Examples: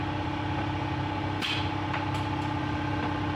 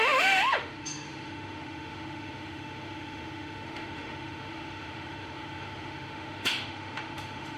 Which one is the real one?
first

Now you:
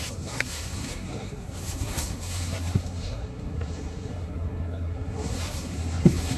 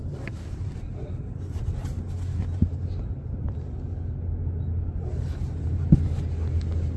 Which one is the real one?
second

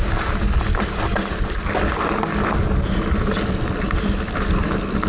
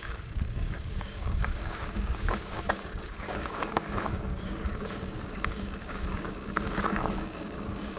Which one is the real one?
first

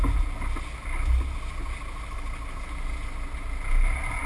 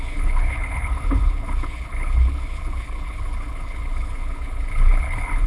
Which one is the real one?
first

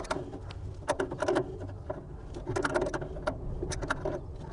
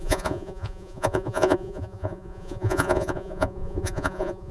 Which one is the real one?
first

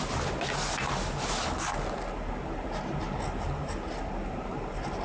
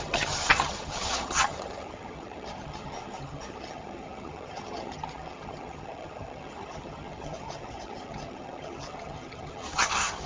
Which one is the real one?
first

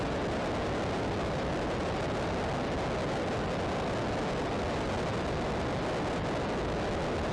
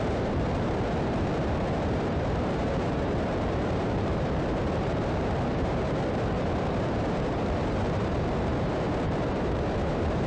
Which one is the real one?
first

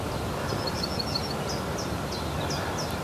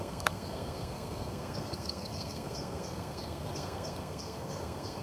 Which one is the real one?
first